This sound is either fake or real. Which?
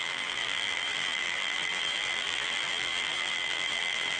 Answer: fake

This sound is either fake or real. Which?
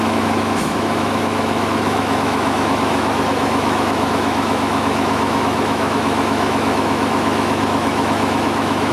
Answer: fake